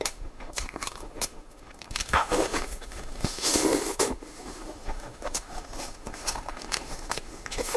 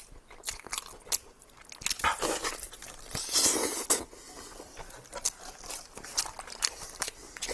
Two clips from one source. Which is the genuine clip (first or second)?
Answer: second